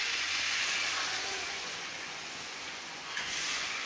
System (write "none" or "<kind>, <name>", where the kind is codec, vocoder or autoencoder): vocoder, Vocos